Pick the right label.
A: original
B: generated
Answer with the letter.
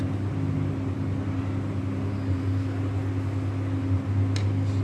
A